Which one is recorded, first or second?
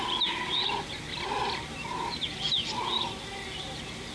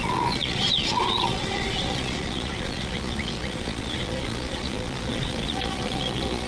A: first